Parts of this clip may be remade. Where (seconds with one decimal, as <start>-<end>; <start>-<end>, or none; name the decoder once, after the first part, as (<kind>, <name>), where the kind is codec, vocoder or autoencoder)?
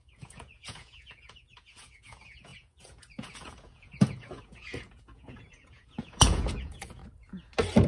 0.0-7.0 (vocoder, Vocos)